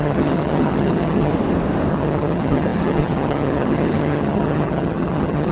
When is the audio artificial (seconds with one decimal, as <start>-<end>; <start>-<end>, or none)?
0.0-1.3; 1.9-5.5